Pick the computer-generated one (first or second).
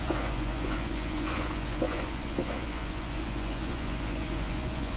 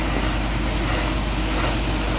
first